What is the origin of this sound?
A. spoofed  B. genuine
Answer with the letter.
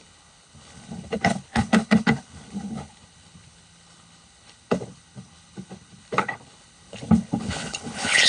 A